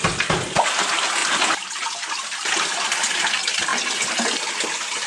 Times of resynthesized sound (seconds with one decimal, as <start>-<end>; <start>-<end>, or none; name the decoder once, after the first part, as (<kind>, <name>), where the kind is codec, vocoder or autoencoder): 0.0-3.7 (vocoder, BigVGAN v2); 4.5-5.1